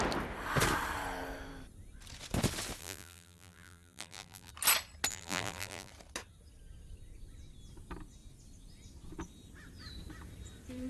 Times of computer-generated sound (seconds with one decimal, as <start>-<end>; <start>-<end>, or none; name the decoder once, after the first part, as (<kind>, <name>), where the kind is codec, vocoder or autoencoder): 2.8-4.5 (vocoder, BigVGAN v2); 5.1-5.9